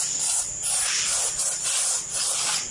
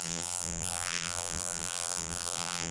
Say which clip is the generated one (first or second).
second